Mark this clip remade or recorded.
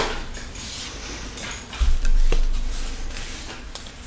recorded